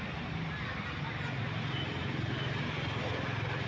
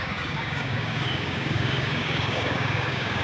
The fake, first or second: second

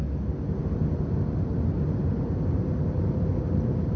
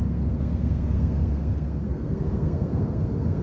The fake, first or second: second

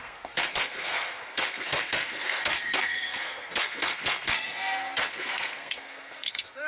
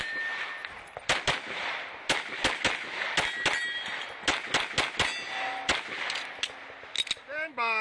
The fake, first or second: first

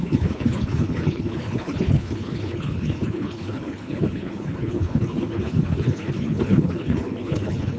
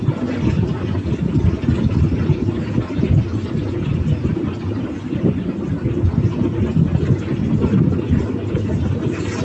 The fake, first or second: first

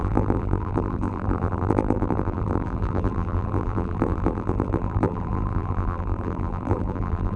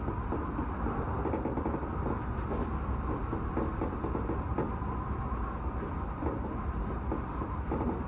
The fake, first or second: first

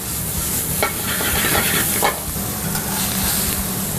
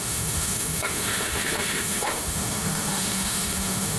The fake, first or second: second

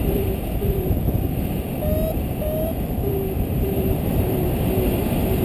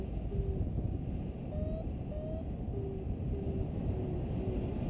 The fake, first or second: first